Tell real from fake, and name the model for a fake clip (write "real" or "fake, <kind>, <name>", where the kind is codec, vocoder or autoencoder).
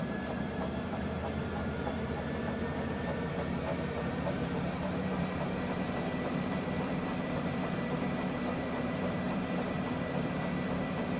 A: fake, vocoder, BigVGAN v2